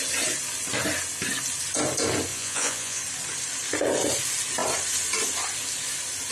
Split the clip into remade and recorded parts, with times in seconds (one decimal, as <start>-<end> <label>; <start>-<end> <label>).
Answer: 0.0-2.3 recorded; 2.3-3.0 remade; 3.0-6.3 recorded

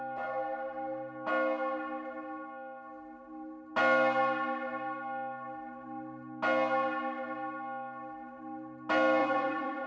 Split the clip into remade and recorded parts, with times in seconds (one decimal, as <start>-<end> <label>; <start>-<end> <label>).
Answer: 0.0-9.2 recorded; 9.2-9.9 remade

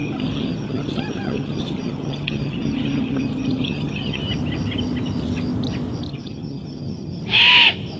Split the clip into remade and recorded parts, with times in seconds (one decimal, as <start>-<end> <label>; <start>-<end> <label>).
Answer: 0.0-4.2 remade; 4.2-6.1 recorded; 6.1-7.2 remade; 7.2-8.0 recorded